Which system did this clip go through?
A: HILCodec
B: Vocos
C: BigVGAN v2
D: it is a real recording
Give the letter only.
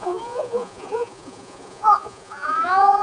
B